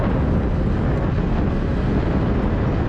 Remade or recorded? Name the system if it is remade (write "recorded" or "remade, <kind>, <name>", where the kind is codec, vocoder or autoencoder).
recorded